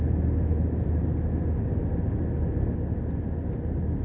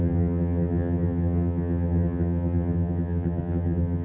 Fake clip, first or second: second